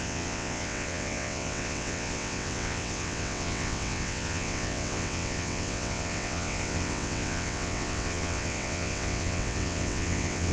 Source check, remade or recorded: remade